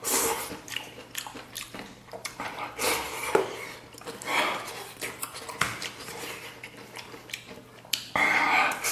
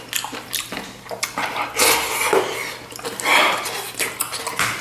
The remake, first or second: first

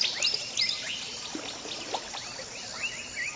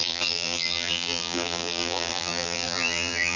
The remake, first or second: second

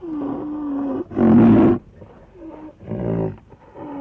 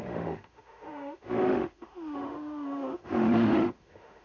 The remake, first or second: second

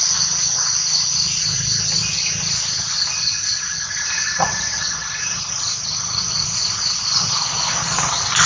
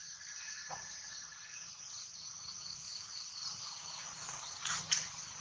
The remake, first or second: second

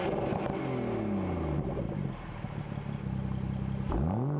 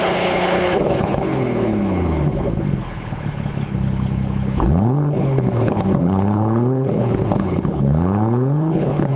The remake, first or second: second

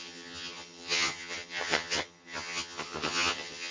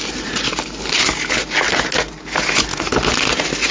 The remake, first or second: first